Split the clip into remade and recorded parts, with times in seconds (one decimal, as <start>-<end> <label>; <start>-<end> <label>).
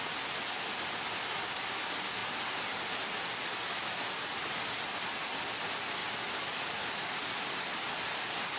0.0-8.6 recorded